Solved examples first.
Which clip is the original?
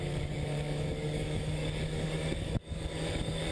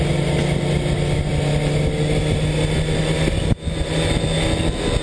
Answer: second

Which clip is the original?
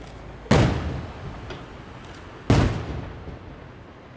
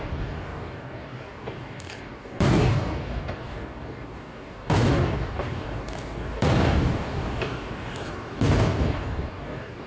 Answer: first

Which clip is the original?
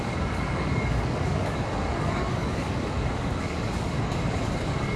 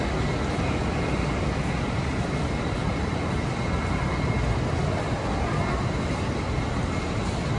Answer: second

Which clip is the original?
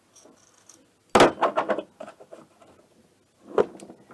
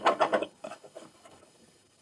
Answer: first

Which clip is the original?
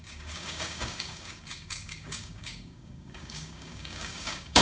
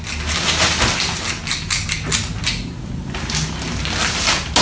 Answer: second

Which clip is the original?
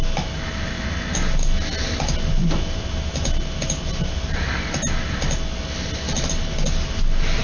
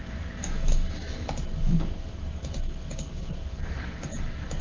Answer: first